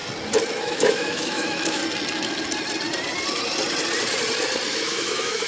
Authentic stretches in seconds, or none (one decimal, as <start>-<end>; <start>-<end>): 0.0-0.6; 1.8-4.7